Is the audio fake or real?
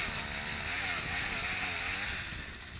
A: real